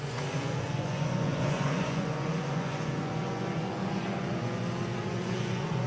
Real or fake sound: fake